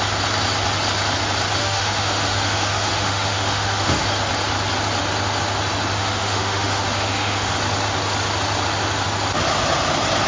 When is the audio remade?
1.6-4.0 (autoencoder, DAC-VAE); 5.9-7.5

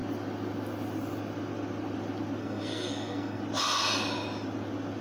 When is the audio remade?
2.4-3.4 (codec, SNAC)